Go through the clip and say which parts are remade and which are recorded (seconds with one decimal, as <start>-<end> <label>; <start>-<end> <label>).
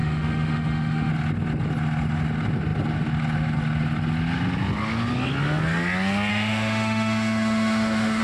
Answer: 0.0-1.1 remade; 1.1-6.3 recorded; 6.3-8.2 remade